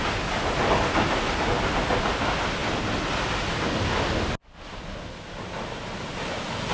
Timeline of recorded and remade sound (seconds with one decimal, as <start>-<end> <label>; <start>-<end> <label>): 0.0-6.7 recorded